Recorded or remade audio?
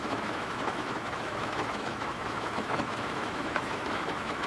remade